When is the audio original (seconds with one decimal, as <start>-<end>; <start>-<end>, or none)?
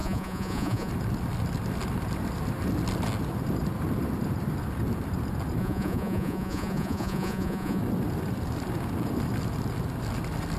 0.9-5.6; 7.8-10.6